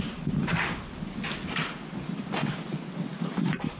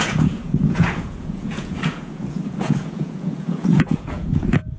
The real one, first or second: first